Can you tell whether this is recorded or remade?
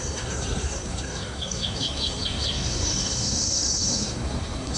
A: remade